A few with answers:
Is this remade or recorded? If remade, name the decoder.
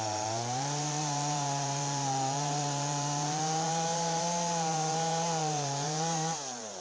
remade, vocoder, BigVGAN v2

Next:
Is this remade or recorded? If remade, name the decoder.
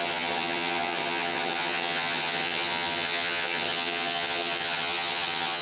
remade, vocoder, HiFi-GAN